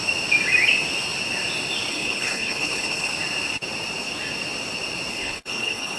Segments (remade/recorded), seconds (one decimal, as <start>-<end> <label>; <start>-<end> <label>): 0.0-1.9 recorded; 1.9-3.1 remade; 3.1-5.1 recorded; 5.1-6.0 remade